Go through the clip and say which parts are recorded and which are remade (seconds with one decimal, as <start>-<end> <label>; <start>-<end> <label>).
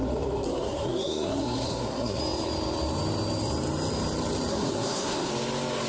0.0-2.2 remade; 2.2-4.5 recorded; 4.5-5.3 remade; 5.3-5.9 recorded